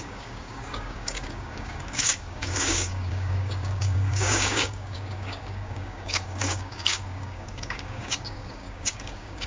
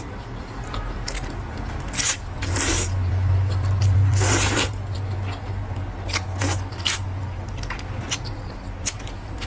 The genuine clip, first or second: second